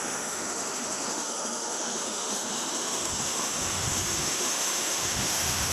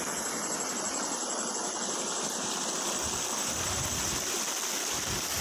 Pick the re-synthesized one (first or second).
first